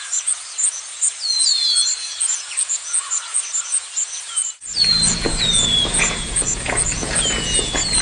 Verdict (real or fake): fake